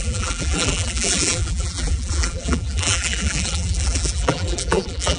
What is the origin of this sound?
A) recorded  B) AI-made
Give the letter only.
B